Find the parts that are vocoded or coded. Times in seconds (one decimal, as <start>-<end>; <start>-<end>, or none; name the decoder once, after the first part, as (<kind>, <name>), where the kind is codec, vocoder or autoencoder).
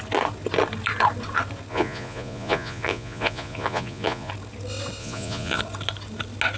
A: 1.7-4.3 (vocoder, Vocos); 5.0-5.6